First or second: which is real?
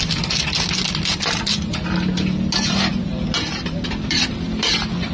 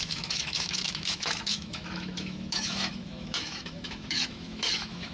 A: first